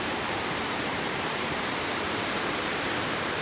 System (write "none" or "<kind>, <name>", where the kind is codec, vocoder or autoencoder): vocoder, BigVGAN v2